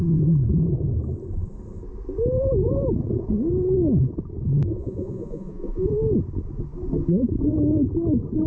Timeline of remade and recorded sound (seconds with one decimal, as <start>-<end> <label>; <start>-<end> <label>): 0.0-4.7 recorded; 4.7-5.9 remade; 5.9-8.5 recorded